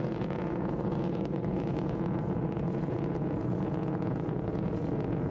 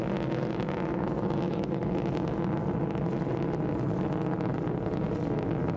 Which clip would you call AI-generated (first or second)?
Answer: first